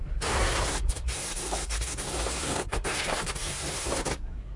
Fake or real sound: fake